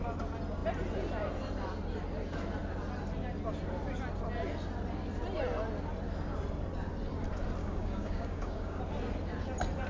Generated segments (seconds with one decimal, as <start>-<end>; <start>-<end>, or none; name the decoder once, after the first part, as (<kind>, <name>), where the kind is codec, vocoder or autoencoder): 7.6-8.8 (codec, DAC)